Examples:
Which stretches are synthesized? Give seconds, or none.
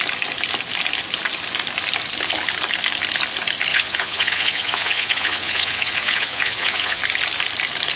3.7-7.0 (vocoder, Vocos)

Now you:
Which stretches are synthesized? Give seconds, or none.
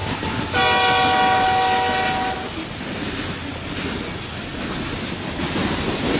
none